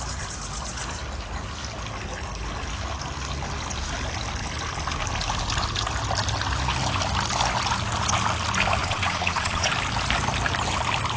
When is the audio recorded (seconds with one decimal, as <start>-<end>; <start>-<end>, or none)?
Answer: 0.0-8.8; 9.7-11.2